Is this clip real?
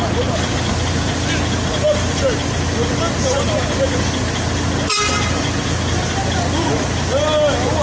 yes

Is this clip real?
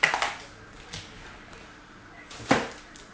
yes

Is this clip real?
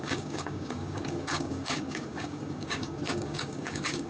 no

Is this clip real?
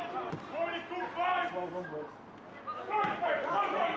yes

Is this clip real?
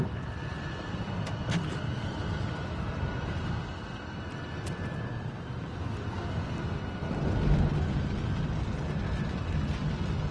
yes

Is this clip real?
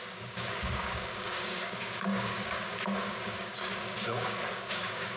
no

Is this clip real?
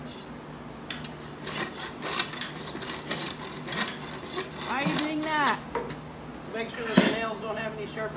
yes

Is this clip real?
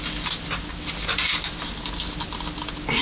yes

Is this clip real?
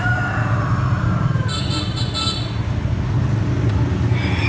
yes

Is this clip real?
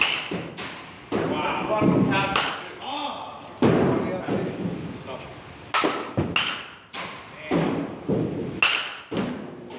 yes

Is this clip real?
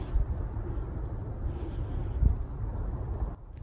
yes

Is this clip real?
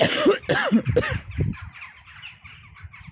yes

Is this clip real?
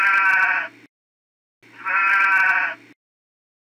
yes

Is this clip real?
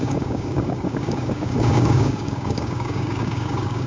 no